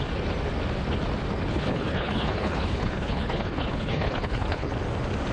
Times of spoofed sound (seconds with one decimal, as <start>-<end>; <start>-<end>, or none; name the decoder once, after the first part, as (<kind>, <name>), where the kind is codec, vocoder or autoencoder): 1.5-4.7 (codec, HILCodec)